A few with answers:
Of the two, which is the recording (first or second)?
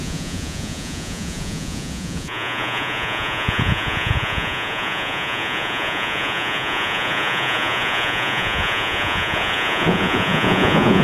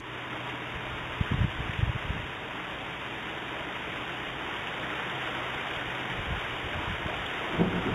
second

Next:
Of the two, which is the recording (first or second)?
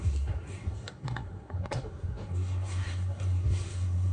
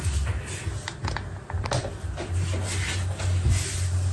second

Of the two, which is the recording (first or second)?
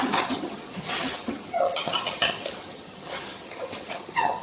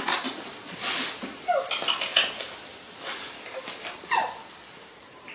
second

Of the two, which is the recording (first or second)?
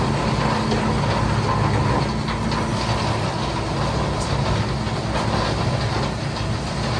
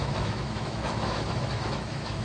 first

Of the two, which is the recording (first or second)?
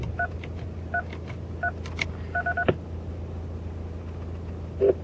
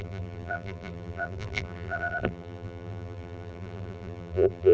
first